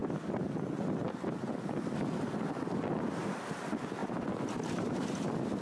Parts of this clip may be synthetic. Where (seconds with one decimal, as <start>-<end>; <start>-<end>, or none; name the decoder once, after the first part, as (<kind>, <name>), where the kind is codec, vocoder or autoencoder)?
4.0-5.0 (vocoder, BigVGAN v2)